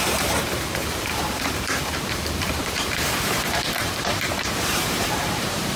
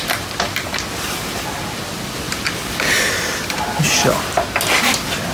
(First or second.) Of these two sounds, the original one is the second